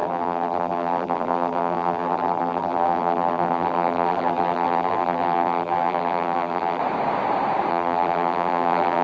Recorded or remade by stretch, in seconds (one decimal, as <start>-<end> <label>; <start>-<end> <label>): 0.0-6.8 remade; 6.8-7.7 recorded; 7.7-9.0 remade